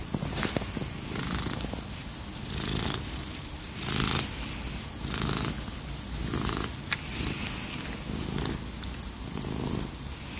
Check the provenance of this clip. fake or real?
real